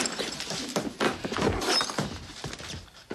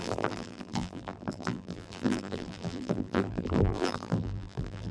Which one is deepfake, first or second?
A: second